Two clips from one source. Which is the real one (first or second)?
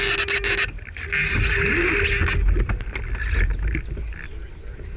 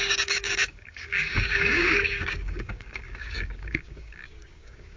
first